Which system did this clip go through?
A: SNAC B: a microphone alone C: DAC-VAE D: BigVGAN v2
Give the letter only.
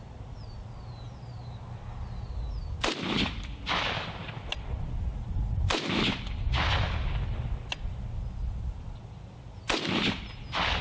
B